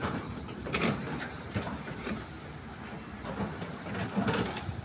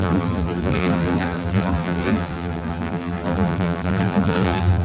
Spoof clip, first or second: second